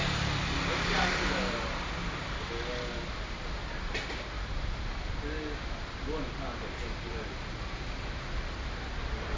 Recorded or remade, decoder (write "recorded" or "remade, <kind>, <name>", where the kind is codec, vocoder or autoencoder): recorded